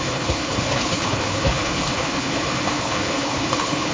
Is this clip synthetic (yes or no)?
yes